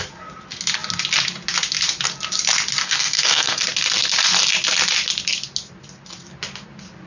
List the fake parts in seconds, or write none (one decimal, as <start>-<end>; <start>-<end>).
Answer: 2.8-3.6